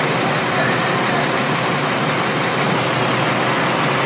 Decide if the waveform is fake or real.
real